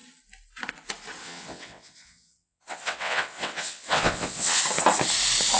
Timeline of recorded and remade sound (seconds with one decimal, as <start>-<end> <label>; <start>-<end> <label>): 0.0-1.2 recorded; 1.2-4.6 remade; 4.6-5.6 recorded